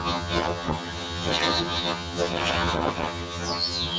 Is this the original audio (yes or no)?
no